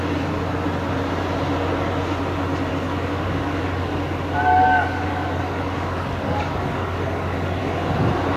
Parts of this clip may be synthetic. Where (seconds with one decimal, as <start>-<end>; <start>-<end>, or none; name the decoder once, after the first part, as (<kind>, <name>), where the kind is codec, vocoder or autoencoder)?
2.7-3.9 (codec, DAC); 4.5-7.6